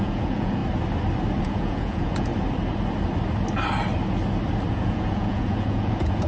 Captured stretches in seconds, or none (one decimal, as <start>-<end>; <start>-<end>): 0.6-1.4; 2.3-4.7